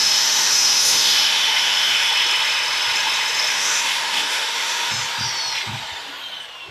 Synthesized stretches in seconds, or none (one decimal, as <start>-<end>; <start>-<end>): 0.0-2.1; 3.5-4.9